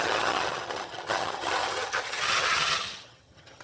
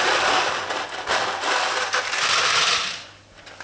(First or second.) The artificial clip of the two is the first